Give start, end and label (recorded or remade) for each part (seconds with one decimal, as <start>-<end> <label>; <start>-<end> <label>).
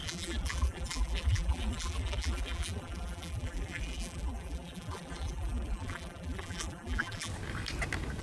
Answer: 0.0-7.3 remade; 7.3-8.2 recorded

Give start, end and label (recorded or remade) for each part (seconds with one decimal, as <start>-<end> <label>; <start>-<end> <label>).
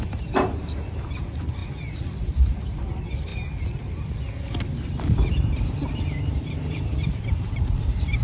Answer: 0.0-3.3 remade; 3.3-6.3 recorded; 6.3-8.2 remade